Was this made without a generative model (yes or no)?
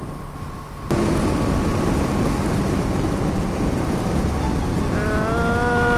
yes